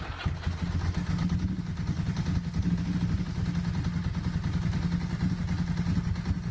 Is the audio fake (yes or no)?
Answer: no